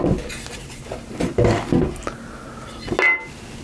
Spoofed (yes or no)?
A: no